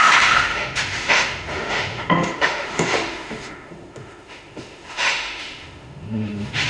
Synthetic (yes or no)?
yes